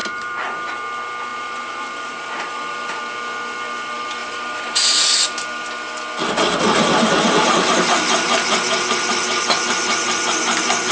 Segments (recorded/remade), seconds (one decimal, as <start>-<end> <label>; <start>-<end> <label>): 0.0-0.7 remade; 0.7-1.3 recorded; 1.3-3.0 remade; 3.0-4.2 recorded; 4.2-5.2 remade; 5.2-10.9 recorded